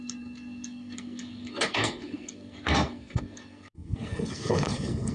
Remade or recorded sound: remade